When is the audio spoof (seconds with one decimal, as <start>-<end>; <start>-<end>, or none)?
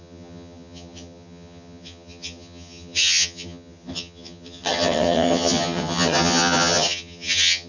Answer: 0.0-7.7